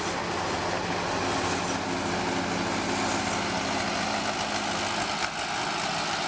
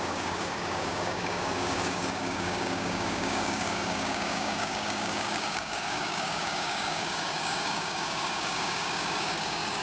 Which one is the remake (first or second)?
second